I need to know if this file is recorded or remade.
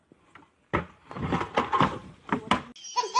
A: recorded